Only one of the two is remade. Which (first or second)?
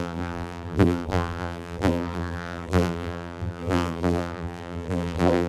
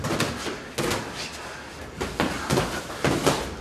first